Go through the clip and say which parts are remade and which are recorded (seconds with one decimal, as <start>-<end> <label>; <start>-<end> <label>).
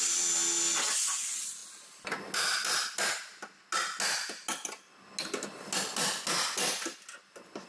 0.0-7.7 recorded